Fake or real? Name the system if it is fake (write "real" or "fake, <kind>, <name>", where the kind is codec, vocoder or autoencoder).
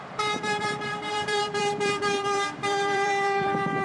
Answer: fake, vocoder, BigVGAN v2